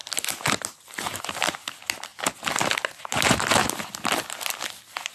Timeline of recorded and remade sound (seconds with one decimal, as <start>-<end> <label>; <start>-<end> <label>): 0.0-5.1 recorded